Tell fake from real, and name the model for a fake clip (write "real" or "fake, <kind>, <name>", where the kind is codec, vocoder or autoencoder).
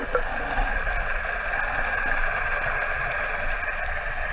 real